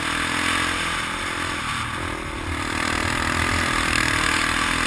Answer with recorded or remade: recorded